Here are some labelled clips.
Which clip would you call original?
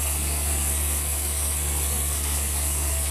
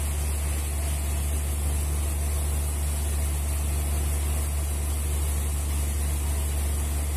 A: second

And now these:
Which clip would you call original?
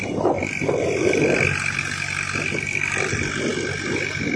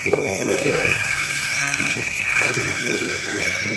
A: first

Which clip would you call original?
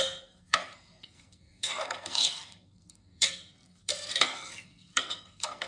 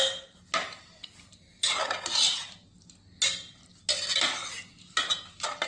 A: second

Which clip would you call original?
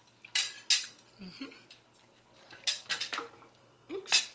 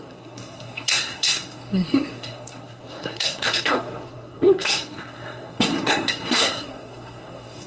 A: first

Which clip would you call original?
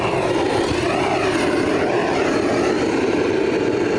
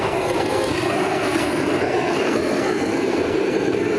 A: first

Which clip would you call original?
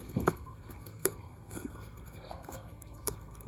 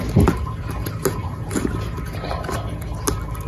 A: second